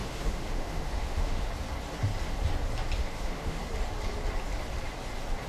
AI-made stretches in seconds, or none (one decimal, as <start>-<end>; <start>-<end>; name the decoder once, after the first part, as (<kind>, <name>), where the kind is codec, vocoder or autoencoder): 0.0-1.5 (autoencoder, DAC-VAE); 3.0-3.6